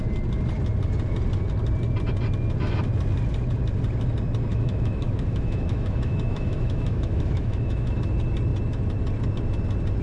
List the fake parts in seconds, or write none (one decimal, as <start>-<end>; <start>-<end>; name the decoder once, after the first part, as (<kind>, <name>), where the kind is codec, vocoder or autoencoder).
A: 4.5-8.0 (autoencoder, DAC-VAE)